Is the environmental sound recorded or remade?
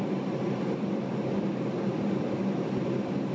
recorded